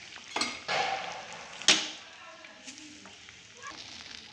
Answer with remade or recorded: recorded